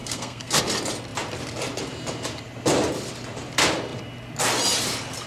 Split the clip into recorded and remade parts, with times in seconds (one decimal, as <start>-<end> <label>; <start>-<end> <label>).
0.0-0.6 remade; 0.6-5.3 recorded